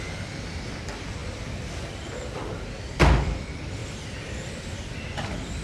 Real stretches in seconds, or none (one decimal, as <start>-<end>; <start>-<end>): 0.0-5.6